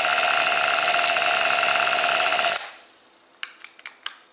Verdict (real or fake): real